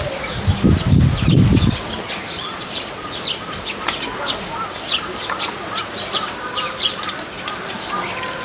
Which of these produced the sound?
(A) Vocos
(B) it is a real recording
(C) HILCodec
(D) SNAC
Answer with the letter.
B